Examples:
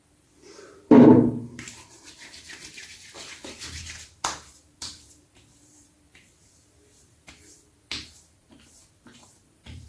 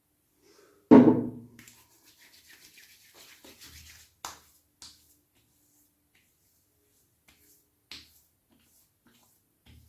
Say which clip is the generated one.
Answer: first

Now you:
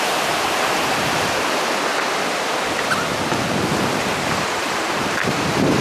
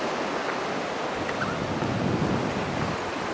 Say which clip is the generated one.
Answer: first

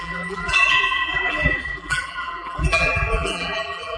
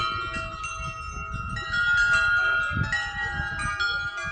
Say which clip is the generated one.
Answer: first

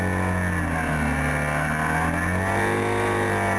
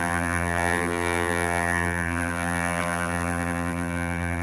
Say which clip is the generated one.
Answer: second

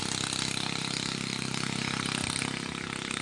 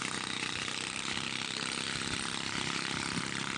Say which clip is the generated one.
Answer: second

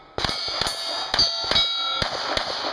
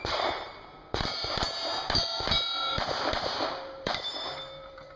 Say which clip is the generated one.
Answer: second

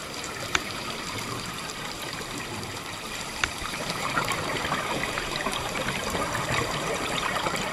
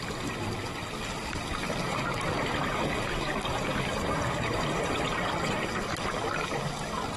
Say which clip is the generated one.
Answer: first